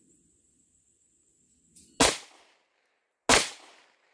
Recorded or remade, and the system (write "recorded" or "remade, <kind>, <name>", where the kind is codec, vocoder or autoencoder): recorded